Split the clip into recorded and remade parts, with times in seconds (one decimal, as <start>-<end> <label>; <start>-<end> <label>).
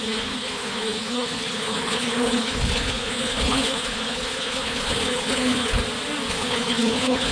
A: 0.0-5.8 remade; 5.8-6.3 recorded; 6.3-7.3 remade